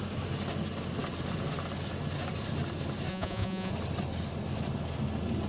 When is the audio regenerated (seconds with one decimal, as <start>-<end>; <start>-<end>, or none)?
3.1-3.7